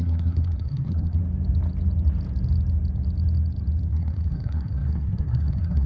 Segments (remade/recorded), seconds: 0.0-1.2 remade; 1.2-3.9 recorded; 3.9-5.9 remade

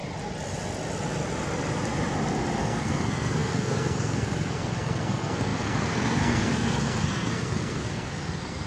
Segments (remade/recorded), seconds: 0.0-2.6 recorded; 2.6-8.7 remade

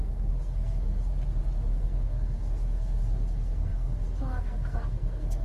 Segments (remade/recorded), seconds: 0.0-1.1 remade; 1.1-1.7 recorded; 1.7-5.4 remade

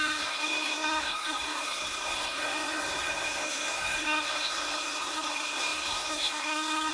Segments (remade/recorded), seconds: 0.0-6.9 remade